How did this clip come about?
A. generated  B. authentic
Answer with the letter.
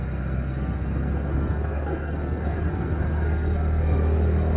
A